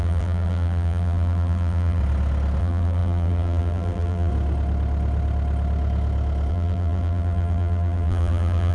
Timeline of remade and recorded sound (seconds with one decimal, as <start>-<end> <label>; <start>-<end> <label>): 0.0-2.0 remade; 2.0-2.6 recorded; 2.6-4.3 remade; 4.3-6.5 recorded; 6.5-8.7 remade